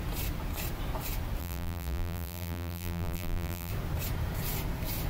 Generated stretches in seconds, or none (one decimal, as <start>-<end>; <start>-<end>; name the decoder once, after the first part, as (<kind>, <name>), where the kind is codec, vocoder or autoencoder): 1.4-3.7 (vocoder, BigVGAN v2)